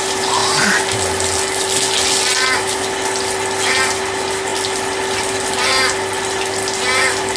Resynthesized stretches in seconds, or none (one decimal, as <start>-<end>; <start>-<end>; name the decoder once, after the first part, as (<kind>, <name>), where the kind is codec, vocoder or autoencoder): none